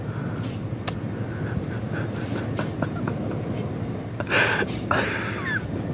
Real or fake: real